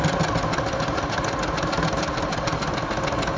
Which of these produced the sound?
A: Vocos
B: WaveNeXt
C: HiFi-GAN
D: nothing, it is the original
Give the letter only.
D